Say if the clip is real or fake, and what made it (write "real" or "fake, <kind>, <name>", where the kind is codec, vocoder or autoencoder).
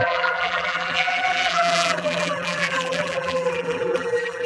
fake, vocoder, BigVGAN v2